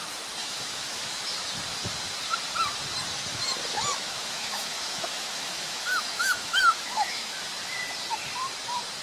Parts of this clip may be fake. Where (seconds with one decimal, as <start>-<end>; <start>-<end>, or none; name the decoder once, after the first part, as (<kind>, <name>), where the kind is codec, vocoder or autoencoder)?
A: 0.4-1.2 (autoencoder, DAC-VAE); 3.9-7.5